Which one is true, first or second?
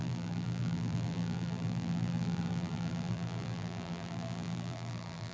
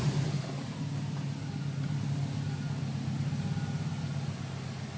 second